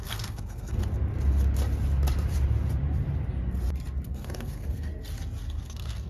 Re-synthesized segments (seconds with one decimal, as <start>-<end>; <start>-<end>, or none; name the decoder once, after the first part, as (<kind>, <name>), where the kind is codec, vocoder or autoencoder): 0.0-0.8 (codec, SNAC); 4.1-4.9; 5.5-6.1